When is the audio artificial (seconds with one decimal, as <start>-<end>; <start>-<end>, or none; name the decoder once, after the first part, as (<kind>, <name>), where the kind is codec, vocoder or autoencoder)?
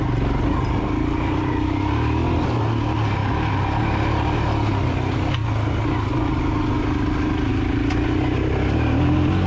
none